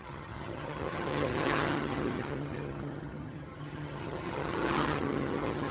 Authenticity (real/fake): fake